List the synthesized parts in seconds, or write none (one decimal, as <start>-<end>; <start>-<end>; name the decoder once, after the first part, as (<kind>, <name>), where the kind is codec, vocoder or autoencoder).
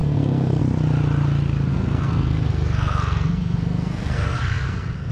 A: 0.0-0.6 (codec, SNAC); 1.7-5.1